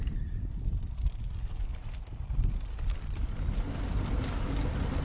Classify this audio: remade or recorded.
recorded